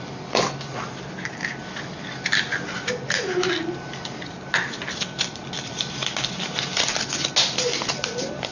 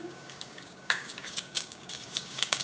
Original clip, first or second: first